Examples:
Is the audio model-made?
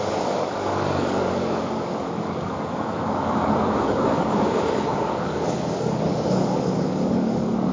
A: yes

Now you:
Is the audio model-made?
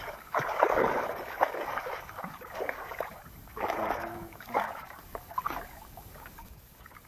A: yes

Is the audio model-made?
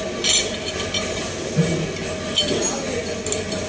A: no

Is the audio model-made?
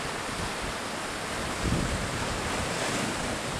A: no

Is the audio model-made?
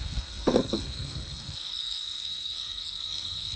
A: yes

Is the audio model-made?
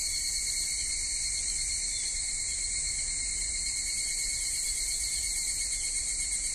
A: yes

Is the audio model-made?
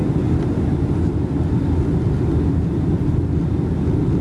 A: no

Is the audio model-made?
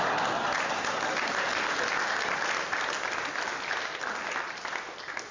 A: no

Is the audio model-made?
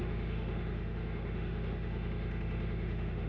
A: yes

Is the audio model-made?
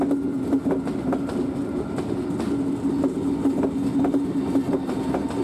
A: no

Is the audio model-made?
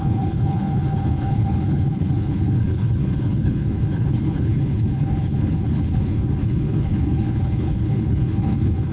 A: yes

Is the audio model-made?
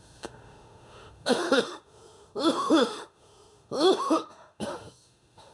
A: yes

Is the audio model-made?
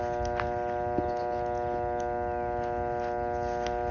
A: no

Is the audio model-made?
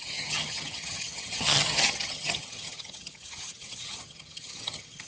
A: yes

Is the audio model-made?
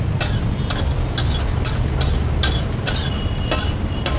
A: no